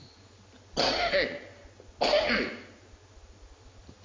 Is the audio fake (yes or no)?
no